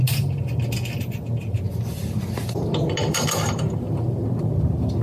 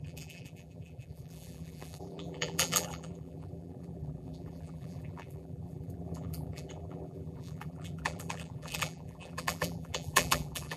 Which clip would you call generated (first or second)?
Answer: second